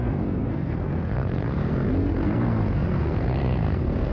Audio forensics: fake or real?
fake